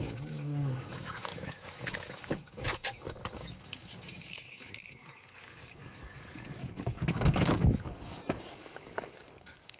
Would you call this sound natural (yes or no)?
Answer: no